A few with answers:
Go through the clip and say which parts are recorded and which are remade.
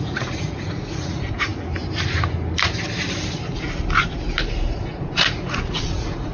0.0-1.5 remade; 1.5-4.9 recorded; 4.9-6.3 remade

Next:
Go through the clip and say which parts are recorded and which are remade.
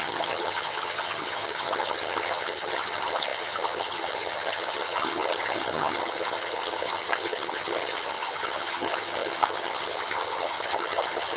0.0-11.4 remade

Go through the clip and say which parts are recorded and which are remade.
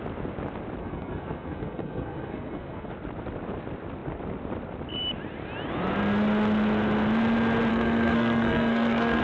0.0-0.8 recorded; 0.8-2.9 remade; 2.9-7.7 recorded; 7.7-9.2 remade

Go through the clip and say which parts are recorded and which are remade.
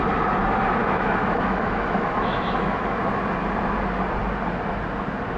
0.0-0.8 recorded; 0.8-3.0 remade; 3.0-5.4 recorded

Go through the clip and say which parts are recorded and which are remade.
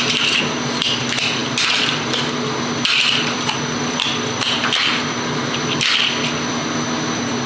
0.0-7.5 recorded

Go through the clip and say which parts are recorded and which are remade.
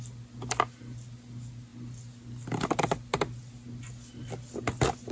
0.0-5.1 recorded